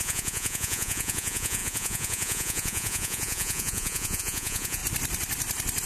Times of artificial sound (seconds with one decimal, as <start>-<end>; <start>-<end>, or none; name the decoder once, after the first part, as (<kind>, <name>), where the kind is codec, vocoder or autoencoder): 0.0-4.8 (vocoder, Vocos)